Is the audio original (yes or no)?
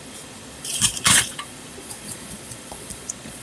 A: no